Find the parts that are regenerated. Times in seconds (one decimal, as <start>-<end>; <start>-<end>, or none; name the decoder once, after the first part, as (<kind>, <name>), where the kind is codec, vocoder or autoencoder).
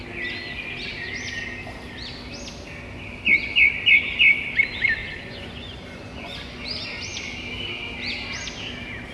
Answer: 5.0-6.6 (vocoder, Vocos)